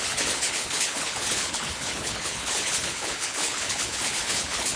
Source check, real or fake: fake